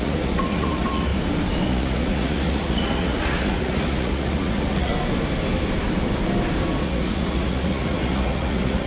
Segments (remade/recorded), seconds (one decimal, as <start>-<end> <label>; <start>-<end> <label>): 0.0-1.1 remade; 1.1-1.7 recorded; 1.7-4.9 remade; 4.9-6.8 recorded; 6.8-8.9 remade